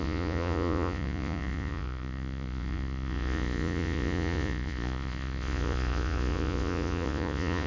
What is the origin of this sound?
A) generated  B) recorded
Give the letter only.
A